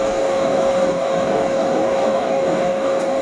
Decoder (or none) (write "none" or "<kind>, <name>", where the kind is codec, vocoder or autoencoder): codec, DAC